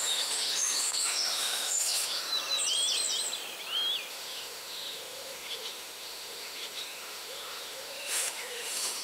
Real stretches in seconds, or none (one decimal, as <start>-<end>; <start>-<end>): 2.3-4.1